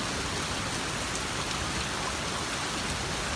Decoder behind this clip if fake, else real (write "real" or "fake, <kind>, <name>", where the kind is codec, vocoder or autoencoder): real